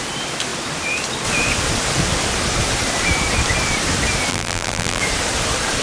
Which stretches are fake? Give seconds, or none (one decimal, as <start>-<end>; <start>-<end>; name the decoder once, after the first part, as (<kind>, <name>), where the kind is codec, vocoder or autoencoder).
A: 4.3-5.0 (vocoder, BigVGAN v2)